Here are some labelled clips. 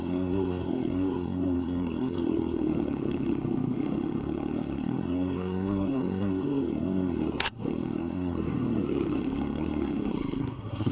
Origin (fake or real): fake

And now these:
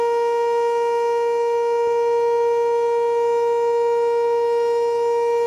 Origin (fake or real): real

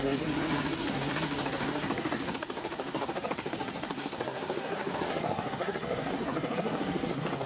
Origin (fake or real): fake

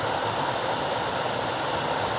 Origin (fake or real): real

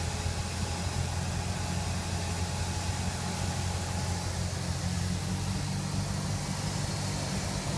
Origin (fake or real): real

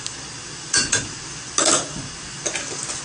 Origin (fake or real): real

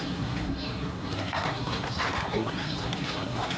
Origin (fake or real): fake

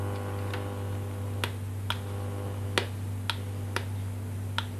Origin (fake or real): real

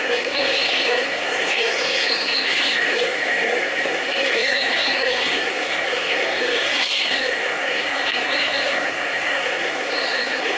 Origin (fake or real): fake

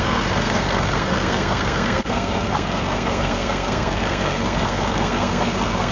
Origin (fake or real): fake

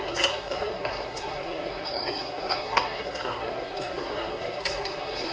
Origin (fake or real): fake